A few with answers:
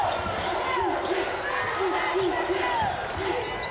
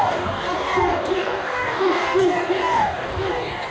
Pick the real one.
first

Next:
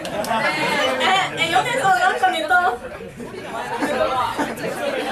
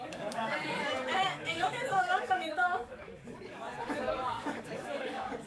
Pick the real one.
first